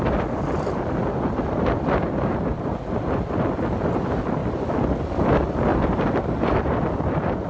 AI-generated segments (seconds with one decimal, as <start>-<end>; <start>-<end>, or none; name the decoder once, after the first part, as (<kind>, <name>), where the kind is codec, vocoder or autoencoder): 0.0-1.0 (vocoder, BigVGAN v2); 2.3-7.5